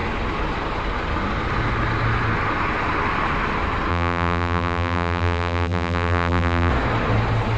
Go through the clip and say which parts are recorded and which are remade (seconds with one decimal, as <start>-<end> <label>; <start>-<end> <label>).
0.0-3.9 recorded; 3.9-6.7 remade; 6.7-7.6 recorded